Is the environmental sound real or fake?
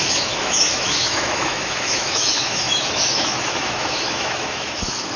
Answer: fake